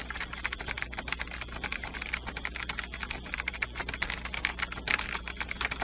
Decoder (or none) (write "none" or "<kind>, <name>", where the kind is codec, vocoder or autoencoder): none